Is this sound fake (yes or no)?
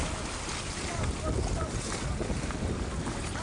no